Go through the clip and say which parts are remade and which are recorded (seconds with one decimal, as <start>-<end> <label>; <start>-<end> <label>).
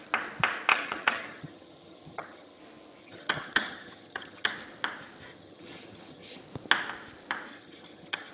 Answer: 0.0-0.7 recorded; 0.7-2.6 remade; 2.6-3.0 recorded; 3.0-4.5 remade; 4.5-5.3 recorded; 5.3-6.4 remade; 6.4-7.5 recorded; 7.5-8.3 remade